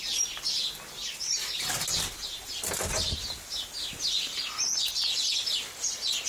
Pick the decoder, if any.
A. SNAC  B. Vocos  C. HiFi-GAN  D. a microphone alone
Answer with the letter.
D